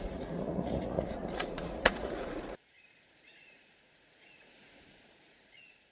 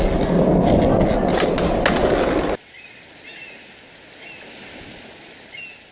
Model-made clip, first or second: first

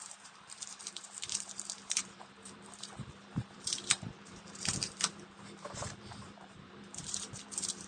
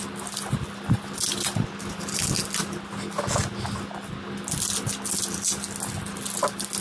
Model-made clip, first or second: first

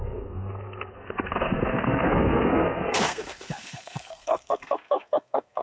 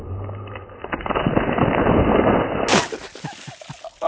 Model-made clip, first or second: first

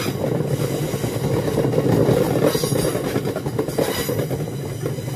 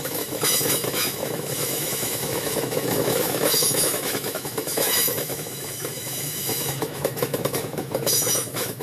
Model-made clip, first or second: second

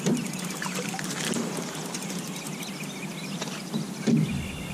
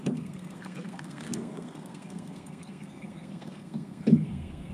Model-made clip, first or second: second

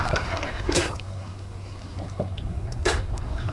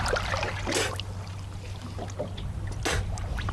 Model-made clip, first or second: first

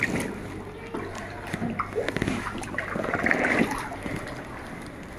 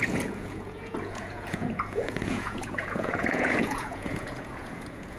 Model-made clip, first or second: second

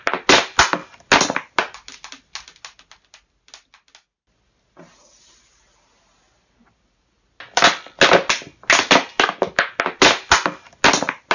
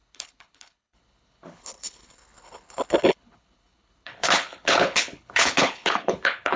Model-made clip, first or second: second